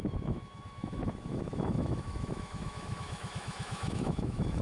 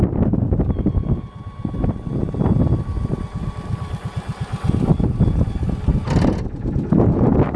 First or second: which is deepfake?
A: first